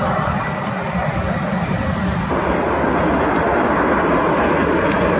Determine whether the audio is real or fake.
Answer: real